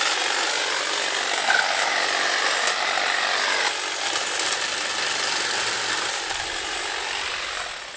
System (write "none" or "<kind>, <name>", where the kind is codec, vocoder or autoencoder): none